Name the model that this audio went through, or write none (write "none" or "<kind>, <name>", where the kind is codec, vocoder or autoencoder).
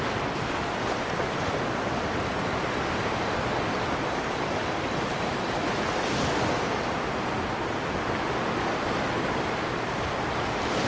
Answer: none